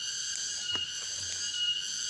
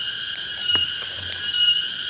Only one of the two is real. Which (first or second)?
first